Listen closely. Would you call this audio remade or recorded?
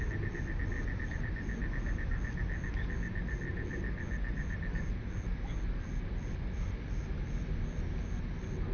recorded